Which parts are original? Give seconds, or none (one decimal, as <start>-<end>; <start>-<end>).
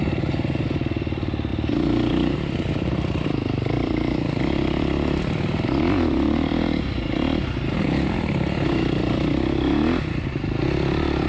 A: 6.5-11.3